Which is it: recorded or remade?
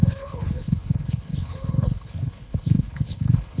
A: remade